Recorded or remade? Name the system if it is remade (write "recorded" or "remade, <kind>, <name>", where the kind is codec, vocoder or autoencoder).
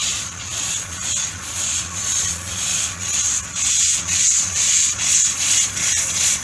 remade, vocoder, Vocos